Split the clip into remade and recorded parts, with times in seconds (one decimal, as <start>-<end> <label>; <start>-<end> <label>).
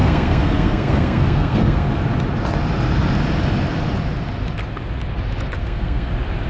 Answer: 0.0-1.9 remade; 1.9-5.6 recorded; 5.6-6.1 remade; 6.1-6.5 recorded